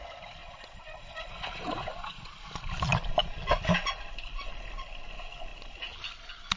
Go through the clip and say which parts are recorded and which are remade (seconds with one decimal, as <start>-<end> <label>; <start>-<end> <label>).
0.0-0.4 recorded; 0.4-2.4 remade; 2.4-6.6 recorded